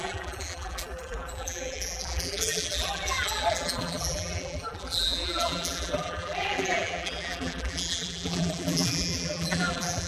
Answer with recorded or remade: remade